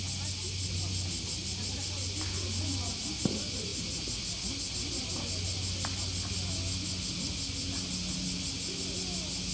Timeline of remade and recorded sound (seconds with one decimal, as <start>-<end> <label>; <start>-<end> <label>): 0.0-9.5 recorded